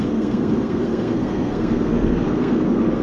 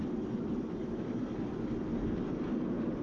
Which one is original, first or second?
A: second